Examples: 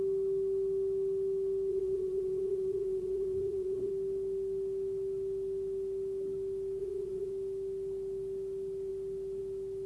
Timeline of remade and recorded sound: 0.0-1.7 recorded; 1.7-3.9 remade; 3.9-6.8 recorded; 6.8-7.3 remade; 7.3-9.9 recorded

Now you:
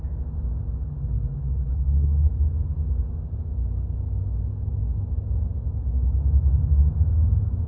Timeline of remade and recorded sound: 0.0-1.4 recorded; 1.4-2.3 remade; 2.3-7.7 recorded

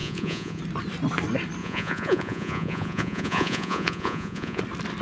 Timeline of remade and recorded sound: 0.0-0.6 remade; 0.6-1.6 recorded; 1.6-4.6 remade; 4.6-5.0 recorded

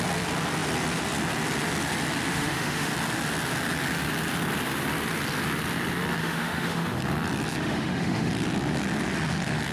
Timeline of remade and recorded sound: 0.0-2.3 recorded; 2.3-2.9 remade; 2.9-6.2 recorded; 6.2-7.0 remade; 7.0-7.6 recorded; 7.6-8.3 remade; 8.3-9.7 recorded

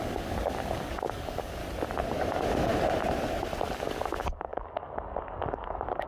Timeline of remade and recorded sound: 0.0-1.6 remade; 1.6-2.1 recorded; 2.1-2.7 remade; 2.7-3.8 recorded; 3.8-6.1 remade

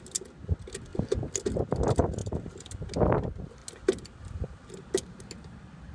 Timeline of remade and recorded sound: 0.0-5.9 recorded

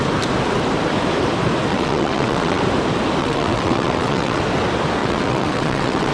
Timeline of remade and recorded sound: 0.0-1.7 recorded; 1.7-2.6 remade; 2.6-3.2 recorded; 3.2-4.4 remade; 4.4-5.0 recorded; 5.0-6.1 remade